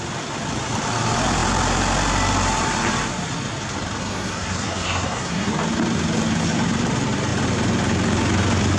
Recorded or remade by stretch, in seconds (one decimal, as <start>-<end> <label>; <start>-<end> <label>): 0.0-4.0 recorded; 4.0-5.5 remade; 5.5-8.8 recorded